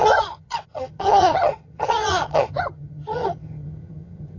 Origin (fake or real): fake